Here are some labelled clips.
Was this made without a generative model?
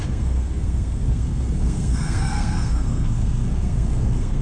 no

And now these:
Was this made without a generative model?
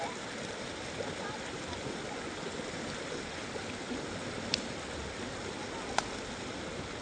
yes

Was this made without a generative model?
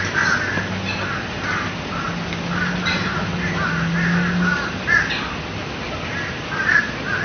yes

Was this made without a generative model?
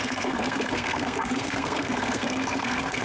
no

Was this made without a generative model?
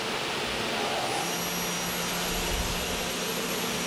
yes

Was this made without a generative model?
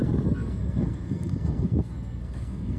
no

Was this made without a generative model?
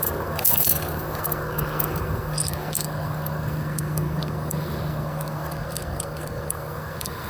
no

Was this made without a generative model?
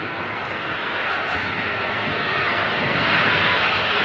no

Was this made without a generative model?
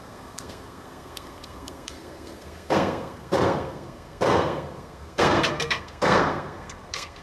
no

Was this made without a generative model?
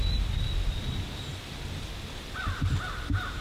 yes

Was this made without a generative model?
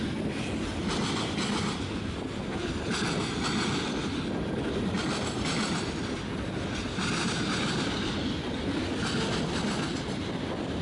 yes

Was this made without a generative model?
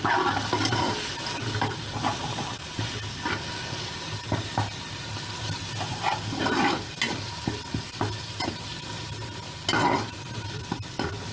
yes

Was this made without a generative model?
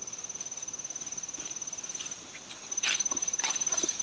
yes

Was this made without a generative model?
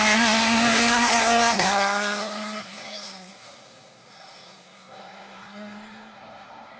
no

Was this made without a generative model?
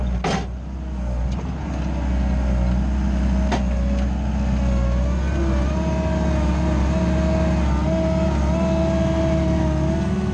yes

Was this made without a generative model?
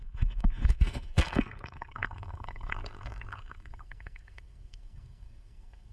no